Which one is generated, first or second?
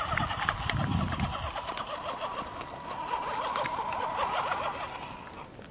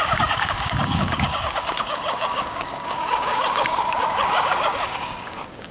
second